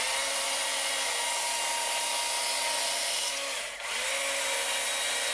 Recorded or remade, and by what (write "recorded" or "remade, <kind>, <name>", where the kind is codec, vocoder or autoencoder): recorded